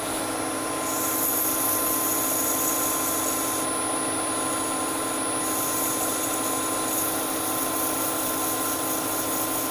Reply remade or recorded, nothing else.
recorded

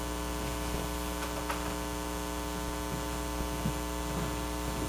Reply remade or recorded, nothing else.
recorded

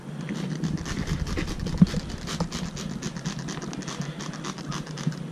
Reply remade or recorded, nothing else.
recorded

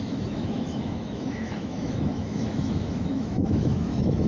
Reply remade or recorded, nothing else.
remade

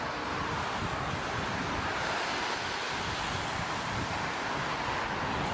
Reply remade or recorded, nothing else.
recorded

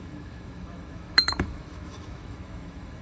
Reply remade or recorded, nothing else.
remade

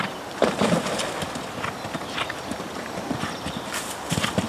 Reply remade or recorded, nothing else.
recorded